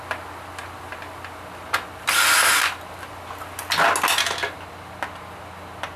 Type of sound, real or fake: real